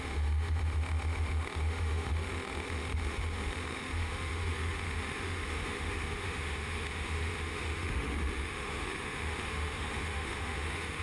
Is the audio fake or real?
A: fake